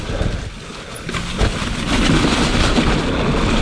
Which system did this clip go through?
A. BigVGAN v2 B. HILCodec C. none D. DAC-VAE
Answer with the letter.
C